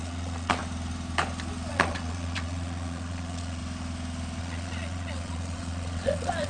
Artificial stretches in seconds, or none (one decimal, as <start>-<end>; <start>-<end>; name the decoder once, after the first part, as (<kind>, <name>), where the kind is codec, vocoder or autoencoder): 0.0-0.6 (vocoder, Vocos); 1.7-3.6; 4.4-6.5